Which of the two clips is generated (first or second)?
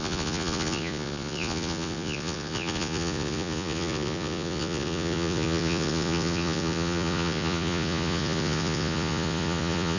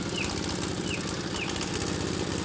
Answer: first